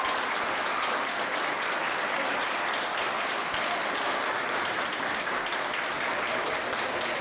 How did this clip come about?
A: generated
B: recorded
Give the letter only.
B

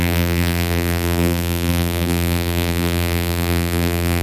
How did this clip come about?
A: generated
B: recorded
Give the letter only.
A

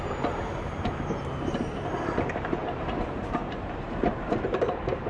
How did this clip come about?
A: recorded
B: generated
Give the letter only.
B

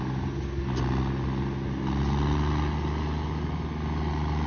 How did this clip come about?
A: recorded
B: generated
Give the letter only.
A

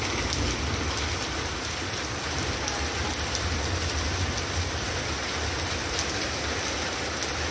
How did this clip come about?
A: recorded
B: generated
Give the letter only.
A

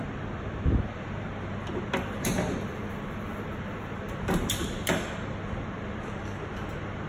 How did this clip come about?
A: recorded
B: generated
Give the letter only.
A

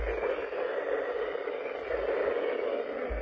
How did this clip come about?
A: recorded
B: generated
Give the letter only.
A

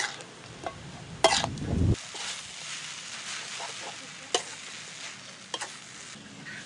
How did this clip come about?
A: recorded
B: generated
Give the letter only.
A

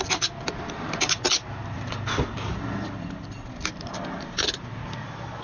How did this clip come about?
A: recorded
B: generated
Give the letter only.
A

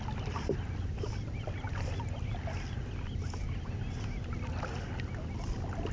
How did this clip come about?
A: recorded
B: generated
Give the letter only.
A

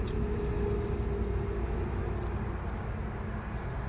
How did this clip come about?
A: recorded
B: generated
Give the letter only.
A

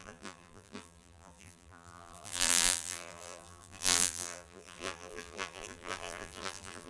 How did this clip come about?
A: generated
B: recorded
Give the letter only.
A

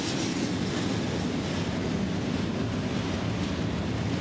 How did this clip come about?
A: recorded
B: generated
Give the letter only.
A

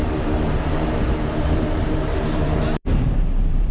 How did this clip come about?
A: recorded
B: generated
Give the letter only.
B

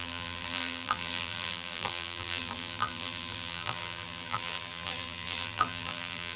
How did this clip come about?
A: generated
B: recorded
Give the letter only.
A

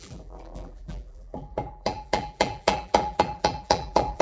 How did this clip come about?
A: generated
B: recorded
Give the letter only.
A